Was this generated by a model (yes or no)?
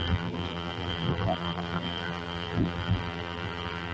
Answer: yes